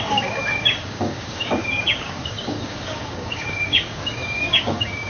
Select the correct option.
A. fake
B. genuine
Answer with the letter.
A